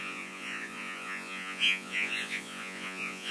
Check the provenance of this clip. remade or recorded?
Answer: remade